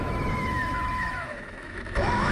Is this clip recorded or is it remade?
remade